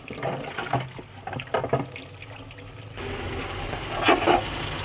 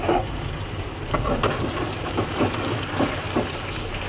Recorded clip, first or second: first